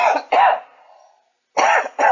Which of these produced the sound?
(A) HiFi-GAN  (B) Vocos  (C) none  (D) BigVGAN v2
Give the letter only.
C